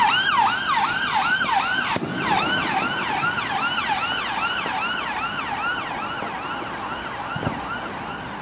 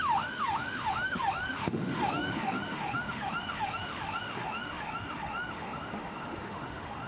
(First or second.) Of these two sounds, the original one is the first